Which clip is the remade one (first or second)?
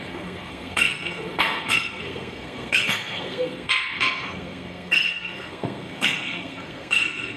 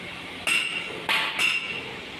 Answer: first